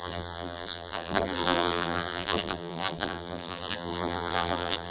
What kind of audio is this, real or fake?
fake